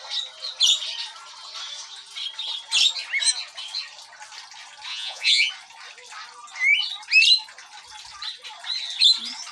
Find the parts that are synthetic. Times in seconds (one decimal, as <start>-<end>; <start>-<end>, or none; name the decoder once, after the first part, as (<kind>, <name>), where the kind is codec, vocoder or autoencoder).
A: 4.9-5.5 (vocoder, Vocos)